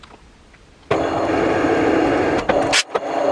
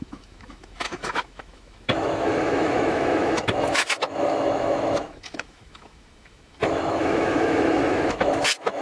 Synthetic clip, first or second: second